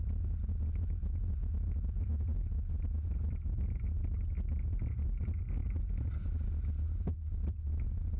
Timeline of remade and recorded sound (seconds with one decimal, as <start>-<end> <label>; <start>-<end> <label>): 0.0-8.2 recorded

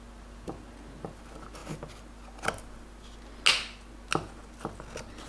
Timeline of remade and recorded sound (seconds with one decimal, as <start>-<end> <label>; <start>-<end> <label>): 0.0-5.3 recorded

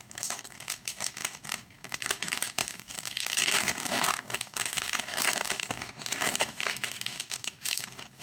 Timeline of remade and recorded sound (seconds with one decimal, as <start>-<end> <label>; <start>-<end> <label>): 0.0-8.2 remade

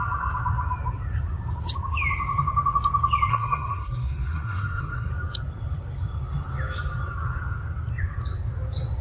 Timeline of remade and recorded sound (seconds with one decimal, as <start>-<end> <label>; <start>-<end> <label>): 0.0-3.3 recorded; 3.3-5.1 remade; 5.1-9.0 recorded

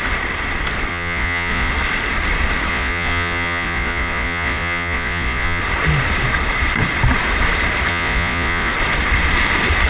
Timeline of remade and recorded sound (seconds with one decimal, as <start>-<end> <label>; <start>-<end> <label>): 0.0-0.9 recorded; 0.9-1.7 remade; 1.7-2.7 recorded; 2.7-5.6 remade; 5.6-7.9 recorded; 7.9-8.7 remade; 8.7-9.9 recorded

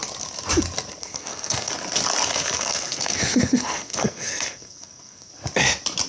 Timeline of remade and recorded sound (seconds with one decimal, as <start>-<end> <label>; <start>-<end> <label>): 0.0-1.0 recorded; 1.0-1.7 remade; 1.7-2.3 recorded; 2.3-5.3 remade; 5.3-6.1 recorded